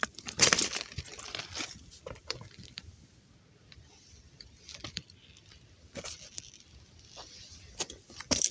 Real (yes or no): no